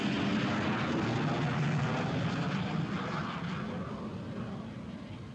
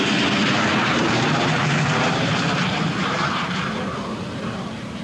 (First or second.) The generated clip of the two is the second